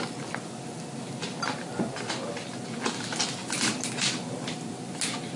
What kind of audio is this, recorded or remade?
recorded